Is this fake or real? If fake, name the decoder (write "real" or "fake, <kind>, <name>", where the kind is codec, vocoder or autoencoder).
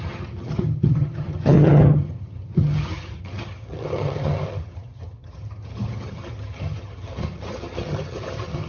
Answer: fake, vocoder, HiFi-GAN